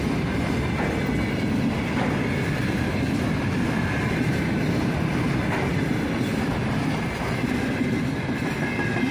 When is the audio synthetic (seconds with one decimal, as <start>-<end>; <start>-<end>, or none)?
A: 6.3-7.5